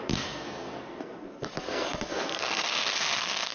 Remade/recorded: remade